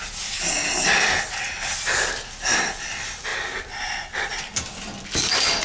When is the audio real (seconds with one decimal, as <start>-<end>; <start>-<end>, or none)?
0.0-5.6